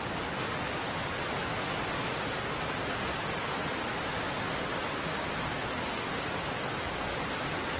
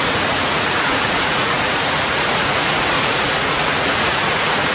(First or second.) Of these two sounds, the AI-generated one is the second